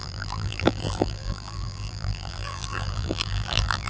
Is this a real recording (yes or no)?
no